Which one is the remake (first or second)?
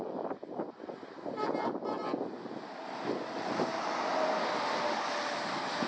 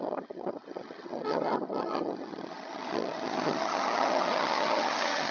second